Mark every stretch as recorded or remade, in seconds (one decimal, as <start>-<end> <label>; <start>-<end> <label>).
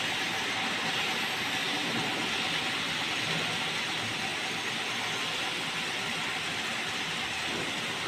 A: 0.0-8.1 recorded